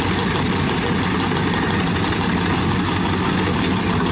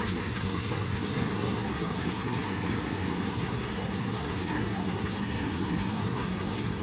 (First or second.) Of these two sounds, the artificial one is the second